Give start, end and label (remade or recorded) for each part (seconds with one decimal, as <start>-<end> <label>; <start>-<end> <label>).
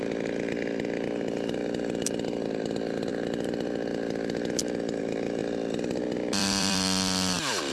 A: 0.0-3.1 remade; 3.1-5.0 recorded; 5.0-7.7 remade